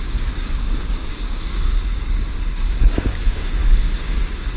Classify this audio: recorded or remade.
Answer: remade